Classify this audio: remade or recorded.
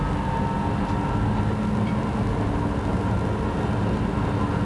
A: recorded